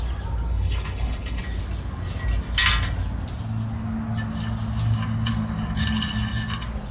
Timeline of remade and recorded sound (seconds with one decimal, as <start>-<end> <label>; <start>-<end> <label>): 0.0-0.5 recorded; 0.5-1.4 remade; 1.4-6.9 recorded